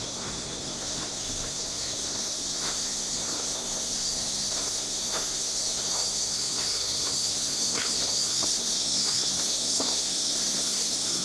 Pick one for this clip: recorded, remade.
remade